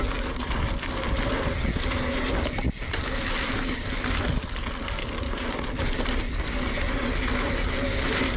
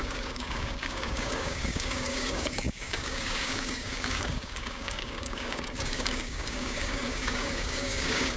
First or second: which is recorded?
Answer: first